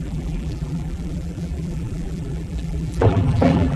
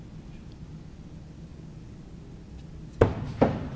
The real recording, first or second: second